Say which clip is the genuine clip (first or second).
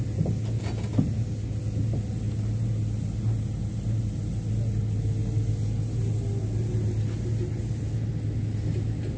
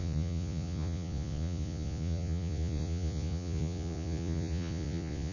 first